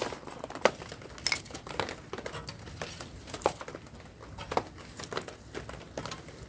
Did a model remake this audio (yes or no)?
no